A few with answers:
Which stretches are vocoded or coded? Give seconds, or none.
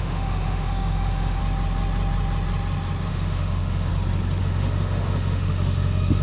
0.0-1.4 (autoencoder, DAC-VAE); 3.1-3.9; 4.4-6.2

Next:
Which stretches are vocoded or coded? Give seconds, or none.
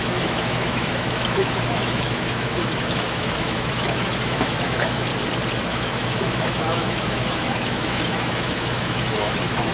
0.0-5.1 (autoencoder, DAC-VAE); 5.6-9.7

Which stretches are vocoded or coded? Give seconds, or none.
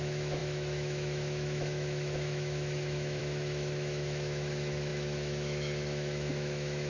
0.0-6.9 (autoencoder, DAC-VAE)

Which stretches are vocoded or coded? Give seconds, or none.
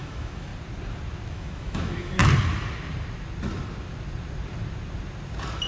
0.0-0.5 (autoencoder, DAC-VAE); 1.3-2.2